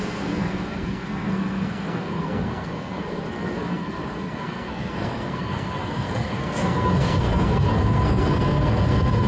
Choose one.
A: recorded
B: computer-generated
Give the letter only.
B